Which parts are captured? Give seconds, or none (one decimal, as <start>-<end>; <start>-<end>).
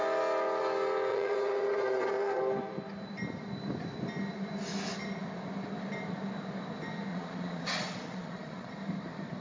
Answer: 0.0-1.1; 2.4-7.1; 8.7-9.4